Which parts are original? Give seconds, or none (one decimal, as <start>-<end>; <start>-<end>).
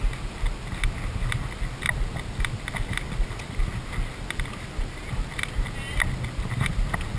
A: 0.0-7.2